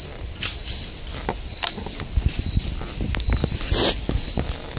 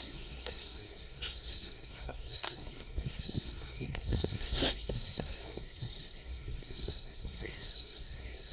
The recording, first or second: first